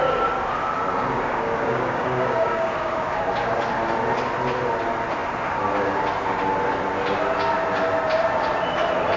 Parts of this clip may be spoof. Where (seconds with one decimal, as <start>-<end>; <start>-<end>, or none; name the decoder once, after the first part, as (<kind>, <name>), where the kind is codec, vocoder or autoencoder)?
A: 1.3-3.2 (codec, DAC)